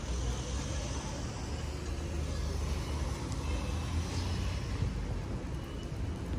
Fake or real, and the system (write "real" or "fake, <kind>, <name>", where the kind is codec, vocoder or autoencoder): real